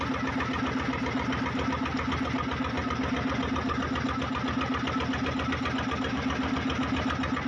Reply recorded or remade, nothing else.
recorded